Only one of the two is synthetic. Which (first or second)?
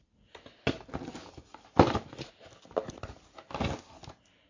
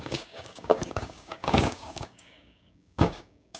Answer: second